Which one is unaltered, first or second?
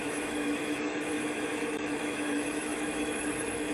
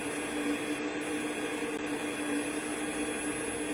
second